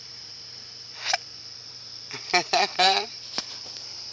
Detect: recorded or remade remade